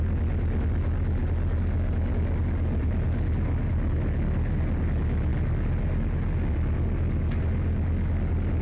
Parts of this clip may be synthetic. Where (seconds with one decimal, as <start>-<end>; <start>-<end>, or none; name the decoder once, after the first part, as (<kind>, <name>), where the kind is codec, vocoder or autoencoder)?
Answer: none